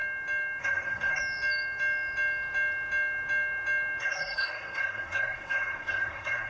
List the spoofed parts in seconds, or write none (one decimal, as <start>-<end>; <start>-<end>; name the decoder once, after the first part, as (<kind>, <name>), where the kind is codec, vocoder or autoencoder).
0.6-1.2 (codec, SNAC); 4.0-6.5